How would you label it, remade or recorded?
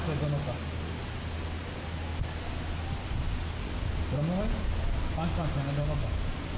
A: recorded